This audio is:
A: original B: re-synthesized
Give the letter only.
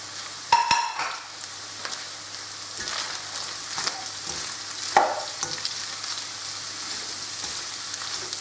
A